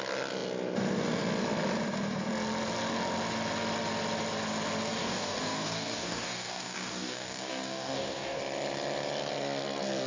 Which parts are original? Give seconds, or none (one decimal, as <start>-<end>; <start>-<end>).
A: 0.0-5.0; 8.4-10.1

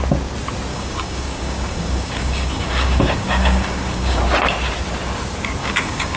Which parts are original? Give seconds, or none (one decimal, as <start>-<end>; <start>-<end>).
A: 0.0-0.7; 4.2-5.6

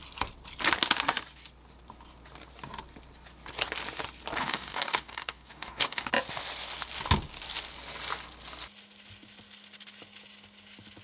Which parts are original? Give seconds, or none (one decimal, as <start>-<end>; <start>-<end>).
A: 0.0-4.4; 6.1-11.0

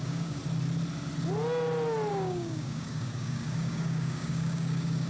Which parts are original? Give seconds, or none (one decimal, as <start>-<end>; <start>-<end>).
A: 0.4-2.1

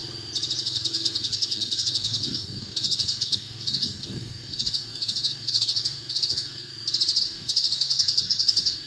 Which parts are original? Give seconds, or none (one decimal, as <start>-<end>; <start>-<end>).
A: 0.0-0.6; 6.7-7.2

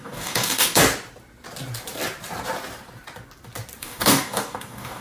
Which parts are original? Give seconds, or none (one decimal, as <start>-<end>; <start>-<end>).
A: 0.8-3.8

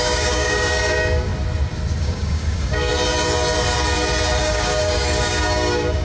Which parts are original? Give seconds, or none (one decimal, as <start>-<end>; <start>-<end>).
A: 1.3-2.0; 2.9-4.4